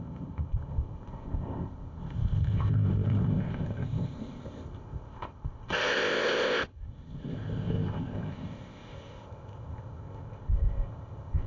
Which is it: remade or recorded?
remade